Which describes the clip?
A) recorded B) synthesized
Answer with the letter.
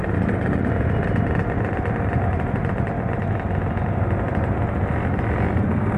A